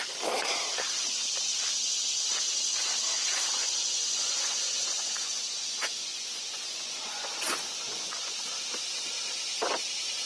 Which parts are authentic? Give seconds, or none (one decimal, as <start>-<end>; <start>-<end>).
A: 0.0-3.1; 8.4-10.3